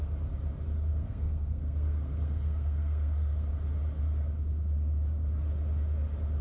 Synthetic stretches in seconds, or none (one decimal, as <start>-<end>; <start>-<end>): 0.9-3.5